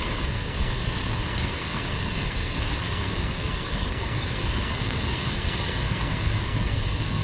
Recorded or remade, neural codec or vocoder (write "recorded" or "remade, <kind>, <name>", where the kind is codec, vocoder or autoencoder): remade, codec, SNAC